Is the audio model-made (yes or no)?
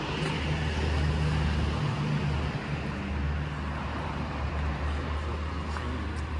no